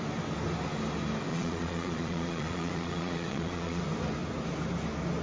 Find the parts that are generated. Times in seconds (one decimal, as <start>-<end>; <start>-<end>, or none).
1.3-3.8